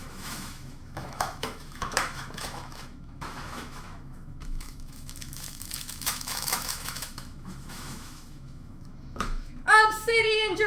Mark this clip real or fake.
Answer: fake